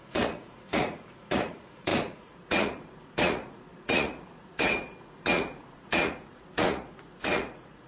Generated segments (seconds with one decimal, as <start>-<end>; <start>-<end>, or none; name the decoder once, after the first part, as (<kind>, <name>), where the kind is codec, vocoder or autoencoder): 0.0-7.9 (vocoder, Vocos)